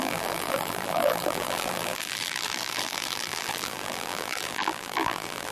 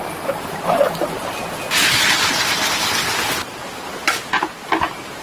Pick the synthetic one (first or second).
first